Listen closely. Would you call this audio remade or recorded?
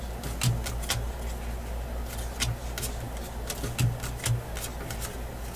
recorded